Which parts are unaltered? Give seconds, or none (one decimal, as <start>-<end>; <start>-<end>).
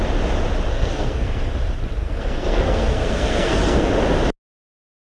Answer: 0.0-0.7; 1.5-2.0; 3.9-5.0